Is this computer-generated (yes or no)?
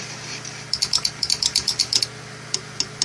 no